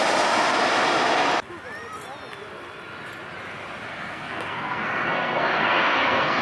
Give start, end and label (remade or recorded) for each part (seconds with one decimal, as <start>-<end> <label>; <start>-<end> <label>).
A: 0.0-3.9 recorded; 3.9-6.4 remade